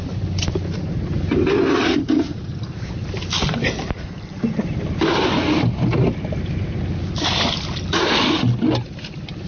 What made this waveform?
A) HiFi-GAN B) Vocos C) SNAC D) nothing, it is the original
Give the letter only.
D